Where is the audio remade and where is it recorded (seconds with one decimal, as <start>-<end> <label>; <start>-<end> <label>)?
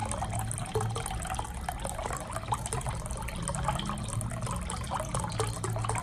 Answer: 0.0-6.0 recorded